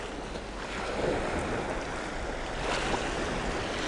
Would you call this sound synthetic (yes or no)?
no